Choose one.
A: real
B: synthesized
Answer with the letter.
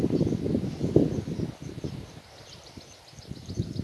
A